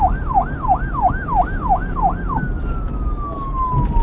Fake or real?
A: real